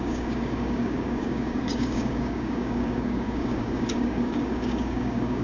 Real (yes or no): no